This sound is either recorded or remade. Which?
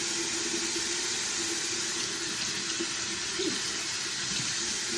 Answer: recorded